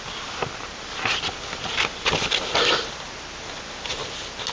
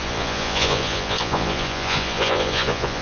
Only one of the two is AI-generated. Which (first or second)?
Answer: second